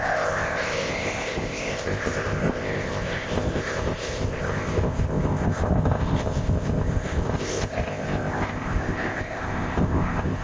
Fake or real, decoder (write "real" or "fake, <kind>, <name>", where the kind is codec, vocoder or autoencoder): fake, codec, ZipCodec